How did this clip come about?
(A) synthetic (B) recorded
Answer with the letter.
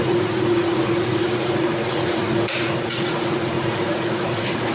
A